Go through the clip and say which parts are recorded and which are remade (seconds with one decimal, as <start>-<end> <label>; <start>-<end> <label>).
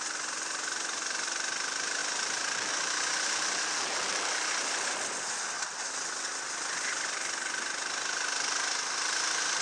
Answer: 0.0-9.6 recorded